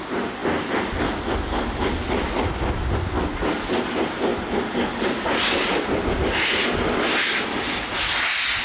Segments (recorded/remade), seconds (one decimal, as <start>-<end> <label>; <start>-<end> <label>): 0.0-8.6 recorded